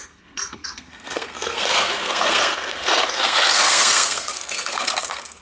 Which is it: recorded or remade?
remade